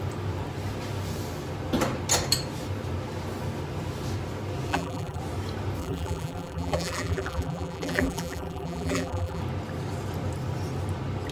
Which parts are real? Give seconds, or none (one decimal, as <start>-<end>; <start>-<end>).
0.0-4.7; 5.2-5.8; 9.4-11.3